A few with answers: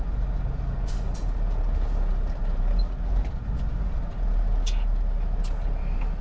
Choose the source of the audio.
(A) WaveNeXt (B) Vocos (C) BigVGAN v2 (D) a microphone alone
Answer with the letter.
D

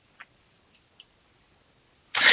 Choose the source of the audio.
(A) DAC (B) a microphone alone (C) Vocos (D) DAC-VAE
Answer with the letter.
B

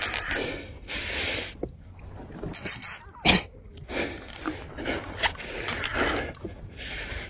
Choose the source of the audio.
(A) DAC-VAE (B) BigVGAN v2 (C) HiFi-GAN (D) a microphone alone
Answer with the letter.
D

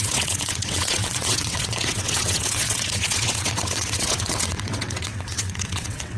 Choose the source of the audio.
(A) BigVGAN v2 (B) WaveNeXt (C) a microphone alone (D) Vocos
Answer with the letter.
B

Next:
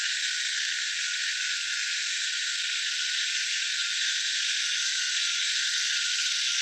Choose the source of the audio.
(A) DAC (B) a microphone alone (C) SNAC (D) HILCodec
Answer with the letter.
C